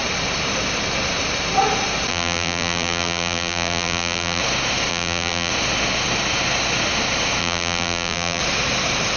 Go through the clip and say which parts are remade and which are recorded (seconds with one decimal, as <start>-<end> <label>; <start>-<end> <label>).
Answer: 0.0-2.1 recorded; 2.1-4.4 remade; 4.4-4.9 recorded; 4.9-5.5 remade; 5.5-7.4 recorded; 7.4-8.4 remade; 8.4-9.2 recorded